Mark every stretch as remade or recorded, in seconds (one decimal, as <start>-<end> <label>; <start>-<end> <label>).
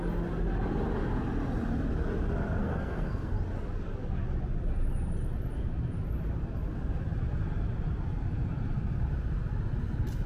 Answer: 0.0-2.6 recorded; 2.6-3.3 remade; 3.3-10.3 recorded